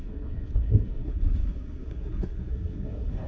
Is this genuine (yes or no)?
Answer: no